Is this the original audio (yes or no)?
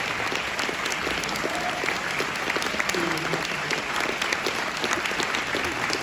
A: yes